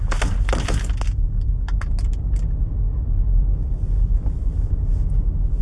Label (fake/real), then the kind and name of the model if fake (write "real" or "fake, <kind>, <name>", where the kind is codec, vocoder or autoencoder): real